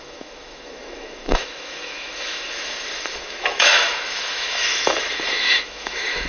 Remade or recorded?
remade